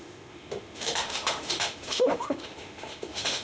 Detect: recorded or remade remade